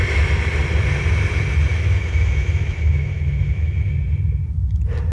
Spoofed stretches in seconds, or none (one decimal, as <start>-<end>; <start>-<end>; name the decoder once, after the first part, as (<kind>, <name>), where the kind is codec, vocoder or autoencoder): 1.7-3.9 (autoencoder, DAC-VAE)